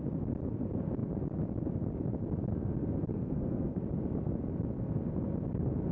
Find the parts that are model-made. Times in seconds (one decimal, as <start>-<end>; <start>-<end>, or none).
3.1-3.7